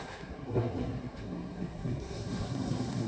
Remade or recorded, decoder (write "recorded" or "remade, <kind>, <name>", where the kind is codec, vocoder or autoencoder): remade, codec, SNAC